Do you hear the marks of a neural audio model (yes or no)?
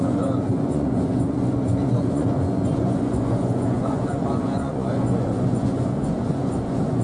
yes